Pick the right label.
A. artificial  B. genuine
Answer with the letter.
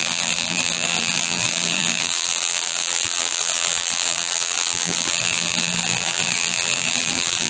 A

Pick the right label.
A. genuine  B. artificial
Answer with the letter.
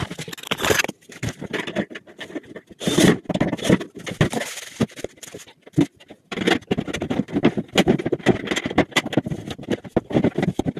A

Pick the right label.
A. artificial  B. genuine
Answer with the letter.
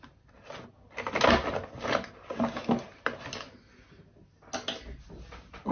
B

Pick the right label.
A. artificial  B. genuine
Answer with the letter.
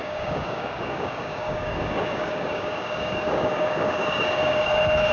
A